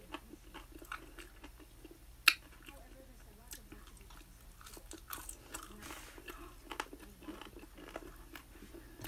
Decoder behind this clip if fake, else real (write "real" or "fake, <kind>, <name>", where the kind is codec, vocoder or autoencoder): real